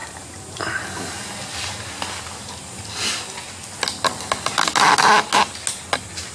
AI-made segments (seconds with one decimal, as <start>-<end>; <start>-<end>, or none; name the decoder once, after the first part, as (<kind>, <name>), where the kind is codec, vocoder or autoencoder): none